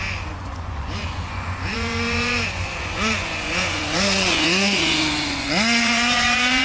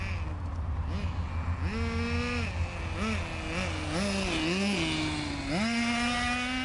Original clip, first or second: second